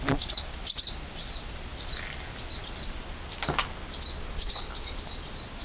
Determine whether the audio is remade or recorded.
recorded